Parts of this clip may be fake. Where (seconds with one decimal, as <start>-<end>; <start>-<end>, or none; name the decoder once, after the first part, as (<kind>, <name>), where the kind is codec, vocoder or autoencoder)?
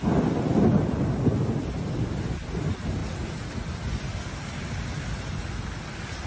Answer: none